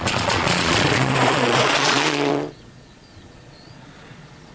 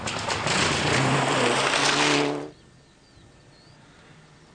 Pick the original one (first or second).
second